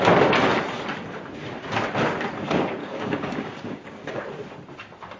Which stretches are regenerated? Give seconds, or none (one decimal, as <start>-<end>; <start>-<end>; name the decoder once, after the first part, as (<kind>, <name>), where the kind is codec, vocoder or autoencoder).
2.8-4.2 (codec, DAC)